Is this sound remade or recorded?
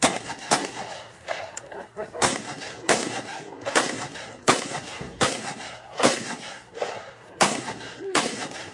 remade